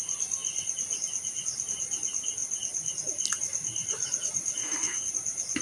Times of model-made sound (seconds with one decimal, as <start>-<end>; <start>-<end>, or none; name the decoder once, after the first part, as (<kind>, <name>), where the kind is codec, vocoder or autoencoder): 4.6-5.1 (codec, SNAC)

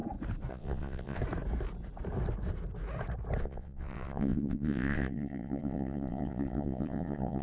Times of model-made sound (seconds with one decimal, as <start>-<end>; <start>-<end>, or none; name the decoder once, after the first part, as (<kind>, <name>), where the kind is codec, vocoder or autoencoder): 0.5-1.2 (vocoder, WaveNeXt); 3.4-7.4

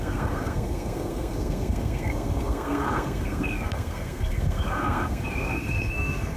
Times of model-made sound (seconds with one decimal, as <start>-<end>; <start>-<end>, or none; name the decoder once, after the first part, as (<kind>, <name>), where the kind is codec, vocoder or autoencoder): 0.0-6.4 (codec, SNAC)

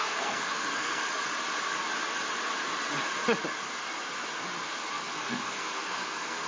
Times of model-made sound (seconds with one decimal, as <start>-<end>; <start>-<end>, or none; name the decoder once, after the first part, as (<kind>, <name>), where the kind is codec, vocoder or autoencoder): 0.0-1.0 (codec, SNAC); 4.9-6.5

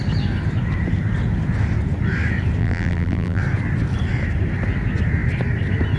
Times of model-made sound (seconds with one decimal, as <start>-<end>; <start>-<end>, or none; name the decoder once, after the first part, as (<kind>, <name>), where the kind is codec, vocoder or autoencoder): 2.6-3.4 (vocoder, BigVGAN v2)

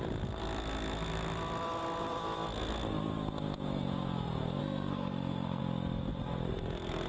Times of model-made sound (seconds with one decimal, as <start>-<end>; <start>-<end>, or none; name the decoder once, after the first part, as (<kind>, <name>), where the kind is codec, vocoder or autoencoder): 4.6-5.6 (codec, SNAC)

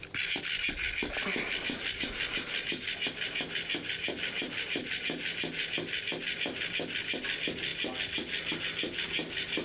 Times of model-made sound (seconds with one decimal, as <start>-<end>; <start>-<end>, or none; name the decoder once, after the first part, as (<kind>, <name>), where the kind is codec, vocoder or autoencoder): none

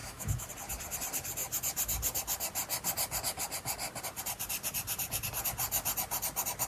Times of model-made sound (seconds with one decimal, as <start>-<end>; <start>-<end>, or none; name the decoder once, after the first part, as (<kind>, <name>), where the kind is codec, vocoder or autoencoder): 0.0-0.5 (autoencoder, DAC-VAE)